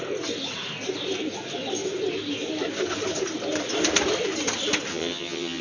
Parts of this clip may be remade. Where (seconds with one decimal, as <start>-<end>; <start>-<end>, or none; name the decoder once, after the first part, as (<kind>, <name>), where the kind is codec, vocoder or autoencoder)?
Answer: 4.9-5.6 (vocoder, HiFi-GAN)